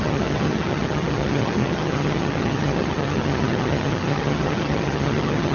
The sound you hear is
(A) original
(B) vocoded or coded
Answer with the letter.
B